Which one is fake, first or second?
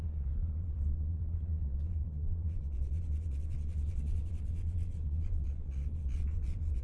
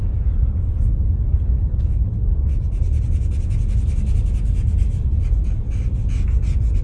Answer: first